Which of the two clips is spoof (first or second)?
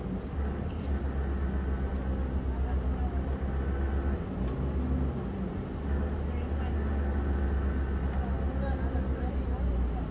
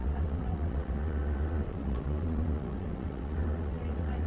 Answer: second